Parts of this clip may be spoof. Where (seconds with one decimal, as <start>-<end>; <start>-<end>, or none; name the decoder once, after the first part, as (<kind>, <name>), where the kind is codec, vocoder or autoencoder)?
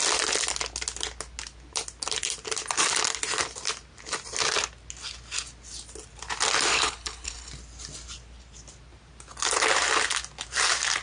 6.7-7.5 (codec, HILCodec)